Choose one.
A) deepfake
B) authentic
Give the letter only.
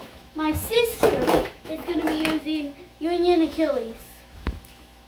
A